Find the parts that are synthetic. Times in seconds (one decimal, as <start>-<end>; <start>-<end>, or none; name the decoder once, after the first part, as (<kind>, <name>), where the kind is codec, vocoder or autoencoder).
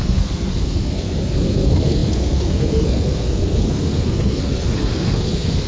0.0-5.7 (codec, SNAC)